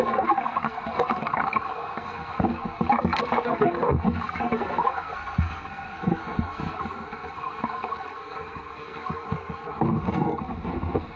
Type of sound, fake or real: fake